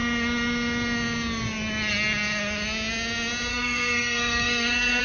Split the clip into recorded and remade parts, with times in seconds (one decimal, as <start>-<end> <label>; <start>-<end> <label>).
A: 0.0-3.5 recorded; 3.5-5.0 remade

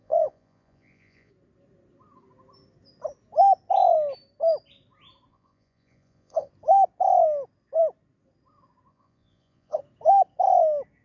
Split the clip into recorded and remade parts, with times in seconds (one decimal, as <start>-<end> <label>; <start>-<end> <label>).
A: 0.0-1.3 remade; 1.3-5.3 recorded; 5.3-6.5 remade; 6.5-8.9 recorded; 8.9-9.8 remade; 9.8-11.0 recorded

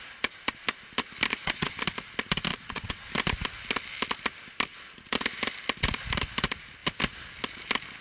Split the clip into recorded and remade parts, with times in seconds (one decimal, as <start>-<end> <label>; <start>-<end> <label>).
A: 0.0-1.3 recorded; 1.3-1.8 remade; 1.8-2.5 recorded; 2.5-3.1 remade; 3.1-8.0 recorded

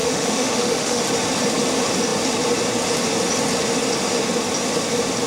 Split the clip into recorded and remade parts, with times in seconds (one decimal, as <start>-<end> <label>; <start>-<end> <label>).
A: 0.0-1.0 remade; 1.0-5.3 recorded

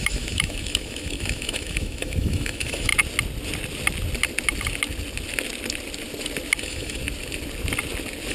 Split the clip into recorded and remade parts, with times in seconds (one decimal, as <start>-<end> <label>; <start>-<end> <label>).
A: 0.0-2.9 remade; 2.9-6.6 recorded; 6.6-7.0 remade; 7.0-8.3 recorded

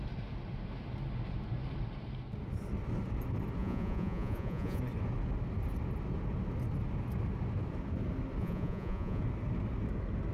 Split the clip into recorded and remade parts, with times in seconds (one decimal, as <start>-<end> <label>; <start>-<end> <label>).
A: 0.0-3.6 recorded; 3.6-4.8 remade; 4.8-8.4 recorded; 8.4-9.2 remade; 9.2-10.3 recorded

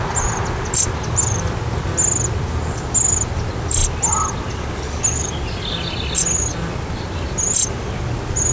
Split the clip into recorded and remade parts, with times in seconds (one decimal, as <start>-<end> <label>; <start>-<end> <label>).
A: 0.0-8.5 recorded

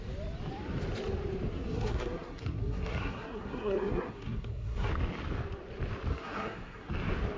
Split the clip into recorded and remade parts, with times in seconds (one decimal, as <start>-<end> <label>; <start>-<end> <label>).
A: 0.0-1.5 recorded; 1.5-4.9 remade; 4.9-6.1 recorded; 6.1-6.9 remade; 6.9-7.4 recorded